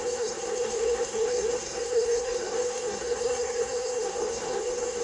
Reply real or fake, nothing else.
fake